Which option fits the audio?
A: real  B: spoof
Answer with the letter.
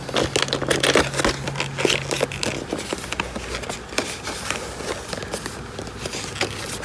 A